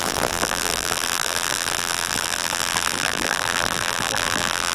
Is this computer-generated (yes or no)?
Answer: yes